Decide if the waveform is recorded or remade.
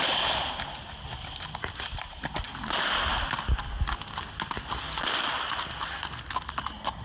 recorded